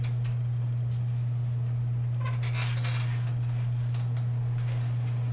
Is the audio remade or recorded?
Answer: recorded